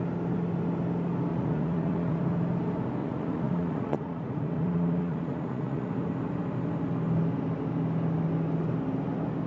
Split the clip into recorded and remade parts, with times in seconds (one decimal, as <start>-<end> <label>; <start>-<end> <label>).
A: 0.0-1.3 recorded; 1.3-2.2 remade; 2.2-3.0 recorded; 3.0-5.9 remade; 5.9-9.5 recorded